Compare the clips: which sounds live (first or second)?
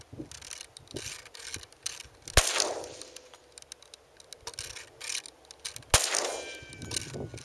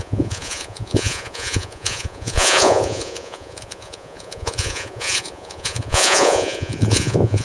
first